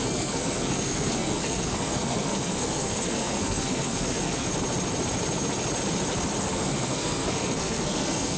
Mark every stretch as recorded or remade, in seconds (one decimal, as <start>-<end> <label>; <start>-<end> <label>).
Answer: 0.0-4.5 remade; 4.5-6.4 recorded; 6.4-8.4 remade